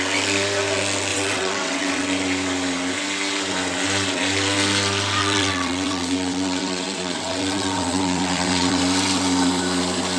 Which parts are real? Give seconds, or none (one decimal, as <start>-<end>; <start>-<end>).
0.0-1.1; 2.0-5.2; 8.8-10.2